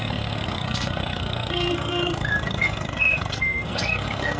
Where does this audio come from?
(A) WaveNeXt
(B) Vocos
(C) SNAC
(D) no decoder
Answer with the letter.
C